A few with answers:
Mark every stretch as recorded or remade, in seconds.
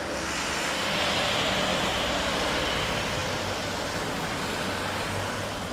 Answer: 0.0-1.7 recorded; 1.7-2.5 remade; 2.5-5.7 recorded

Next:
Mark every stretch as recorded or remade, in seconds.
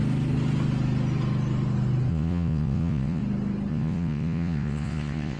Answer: 0.0-2.1 recorded; 2.1-3.2 remade; 3.2-3.7 recorded; 3.7-5.4 remade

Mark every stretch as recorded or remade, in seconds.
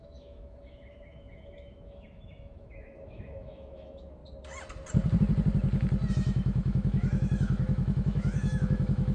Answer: 0.0-4.2 remade; 4.2-6.1 recorded; 6.1-9.1 remade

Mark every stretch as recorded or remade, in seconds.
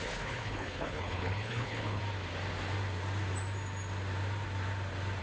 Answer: 0.0-2.0 remade; 2.0-5.2 recorded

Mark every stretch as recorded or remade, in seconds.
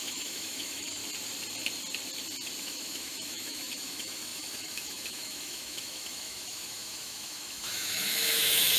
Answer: 0.0-1.0 remade; 1.0-2.6 recorded; 2.6-8.8 remade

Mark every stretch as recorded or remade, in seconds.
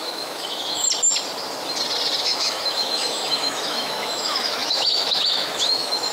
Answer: 0.0-0.8 remade; 0.8-2.2 recorded; 2.2-6.1 remade